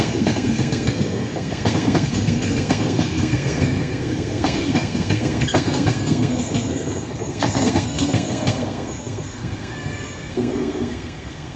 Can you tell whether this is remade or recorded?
remade